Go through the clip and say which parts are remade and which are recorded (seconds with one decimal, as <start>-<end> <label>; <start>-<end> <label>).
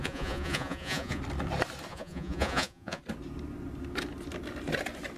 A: 0.0-1.2 remade; 1.2-1.9 recorded; 1.9-3.0 remade; 3.0-5.2 recorded